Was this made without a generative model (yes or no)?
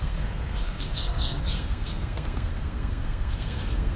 no